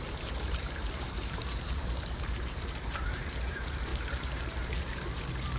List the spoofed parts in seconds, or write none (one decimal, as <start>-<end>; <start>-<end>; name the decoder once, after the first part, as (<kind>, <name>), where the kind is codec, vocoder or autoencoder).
0.0-5.6 (vocoder, BigVGAN v2)